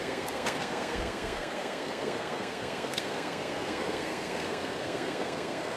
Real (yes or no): no